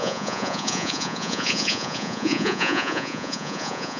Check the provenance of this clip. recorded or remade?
remade